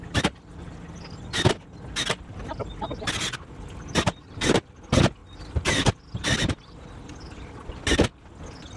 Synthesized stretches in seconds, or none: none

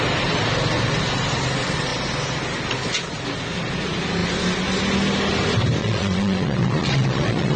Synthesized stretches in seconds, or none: 5.8-7.6 (vocoder, Vocos)